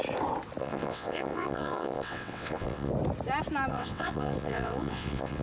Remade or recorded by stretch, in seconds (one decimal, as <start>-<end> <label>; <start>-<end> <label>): 0.0-0.6 recorded; 0.6-2.9 remade; 2.9-3.7 recorded; 3.7-5.4 remade